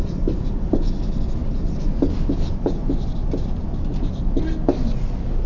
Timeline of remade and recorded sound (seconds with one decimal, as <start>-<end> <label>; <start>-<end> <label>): 0.0-5.5 recorded